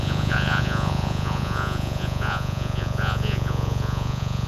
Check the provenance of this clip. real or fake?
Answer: fake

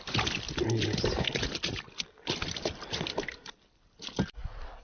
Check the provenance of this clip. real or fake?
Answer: real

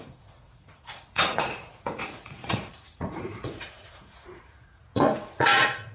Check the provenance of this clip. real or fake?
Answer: fake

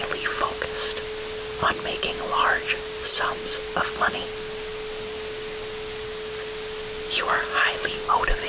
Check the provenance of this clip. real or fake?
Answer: real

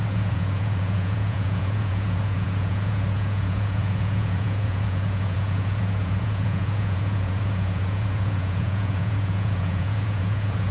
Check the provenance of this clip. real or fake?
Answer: fake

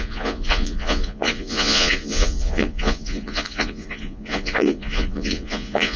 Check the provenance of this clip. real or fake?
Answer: fake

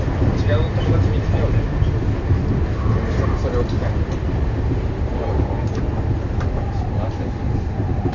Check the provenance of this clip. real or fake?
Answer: real